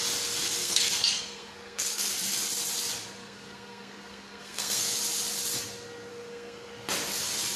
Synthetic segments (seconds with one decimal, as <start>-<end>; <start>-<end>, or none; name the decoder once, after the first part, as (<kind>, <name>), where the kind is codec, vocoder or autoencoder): 0.6-2.1 (codec, SNAC); 3.2-5.0; 6.1-6.7